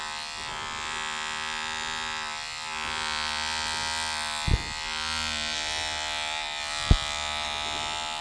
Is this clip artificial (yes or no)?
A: no